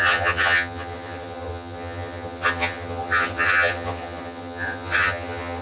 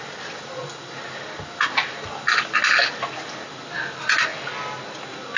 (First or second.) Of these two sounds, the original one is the second